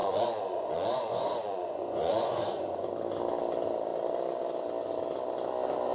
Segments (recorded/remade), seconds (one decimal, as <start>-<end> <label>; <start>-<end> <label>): 0.0-2.9 remade; 2.9-5.9 recorded